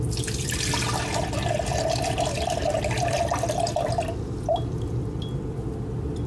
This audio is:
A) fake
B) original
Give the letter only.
B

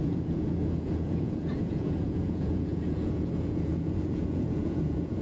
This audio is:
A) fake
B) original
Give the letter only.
A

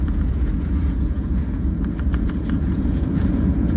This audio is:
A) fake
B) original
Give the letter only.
A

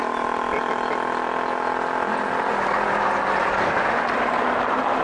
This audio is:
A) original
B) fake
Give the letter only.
A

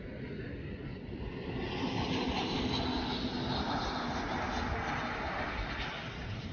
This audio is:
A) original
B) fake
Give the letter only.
A